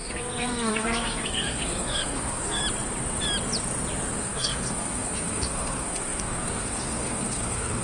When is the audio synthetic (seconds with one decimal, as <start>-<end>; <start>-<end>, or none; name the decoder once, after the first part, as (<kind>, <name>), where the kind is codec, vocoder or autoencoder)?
0.0-2.6 (codec, SNAC); 4.1-7.8